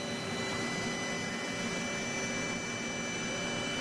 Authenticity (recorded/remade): recorded